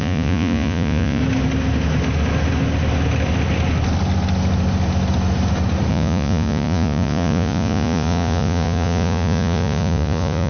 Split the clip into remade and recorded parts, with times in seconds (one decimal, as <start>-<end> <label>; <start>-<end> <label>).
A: 0.0-1.2 remade; 1.2-5.9 recorded; 5.9-10.5 remade